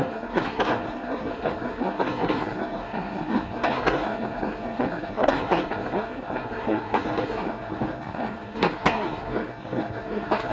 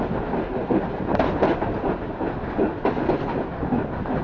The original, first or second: second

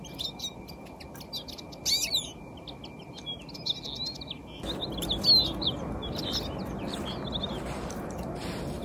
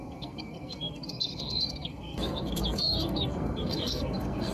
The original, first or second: first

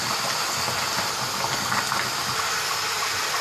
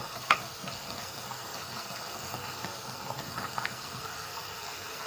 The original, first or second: first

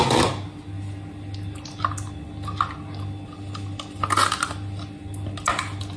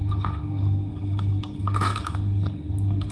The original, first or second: first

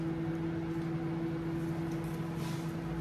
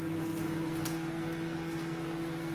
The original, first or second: first